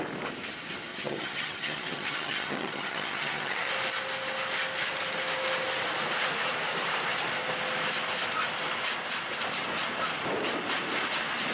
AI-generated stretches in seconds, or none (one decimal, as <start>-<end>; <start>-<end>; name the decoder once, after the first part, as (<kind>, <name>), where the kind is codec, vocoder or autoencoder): 0.9-3.7 (vocoder, HiFi-GAN)